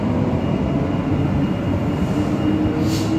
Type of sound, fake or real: real